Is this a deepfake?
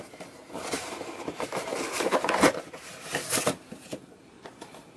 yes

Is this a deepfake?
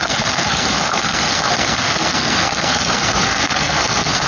yes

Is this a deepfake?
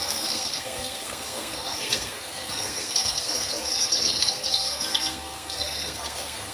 yes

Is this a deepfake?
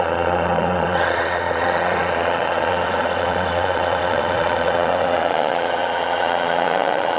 yes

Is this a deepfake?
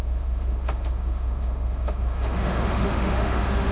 yes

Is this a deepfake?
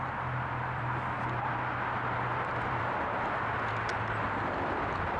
yes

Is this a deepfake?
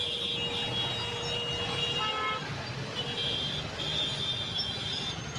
no